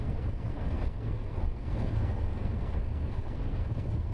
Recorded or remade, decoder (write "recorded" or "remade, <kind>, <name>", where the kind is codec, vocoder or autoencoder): remade, codec, SNAC